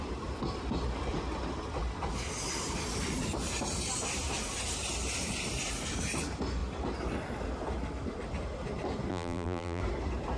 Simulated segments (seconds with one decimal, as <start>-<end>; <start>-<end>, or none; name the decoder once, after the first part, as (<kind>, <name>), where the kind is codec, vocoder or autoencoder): 9.1-9.8 (vocoder, BigVGAN v2)